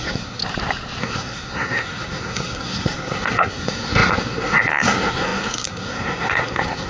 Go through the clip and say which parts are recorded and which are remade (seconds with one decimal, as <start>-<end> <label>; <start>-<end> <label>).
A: 0.0-0.4 remade; 0.4-1.0 recorded; 1.0-6.9 remade